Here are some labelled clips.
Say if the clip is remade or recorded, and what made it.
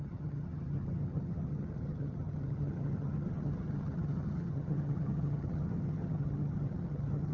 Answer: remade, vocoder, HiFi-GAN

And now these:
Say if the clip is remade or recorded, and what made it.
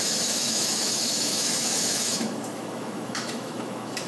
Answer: remade, autoencoder, DAC-VAE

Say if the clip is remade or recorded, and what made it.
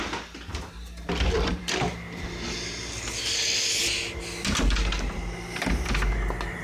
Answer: recorded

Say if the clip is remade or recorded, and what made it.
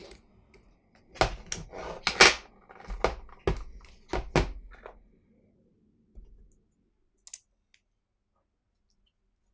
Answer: recorded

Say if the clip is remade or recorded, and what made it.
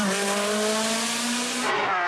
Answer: recorded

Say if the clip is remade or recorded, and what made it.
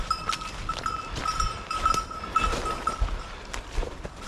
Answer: recorded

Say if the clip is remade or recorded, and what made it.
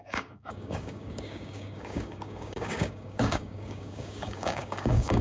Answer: remade, codec, DAC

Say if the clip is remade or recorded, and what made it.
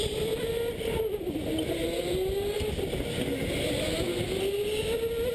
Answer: recorded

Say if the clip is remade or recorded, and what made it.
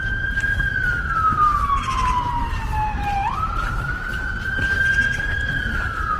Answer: remade, vocoder, BigVGAN v2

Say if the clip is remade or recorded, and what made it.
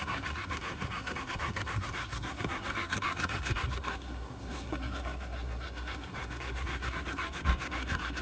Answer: remade, codec, SNAC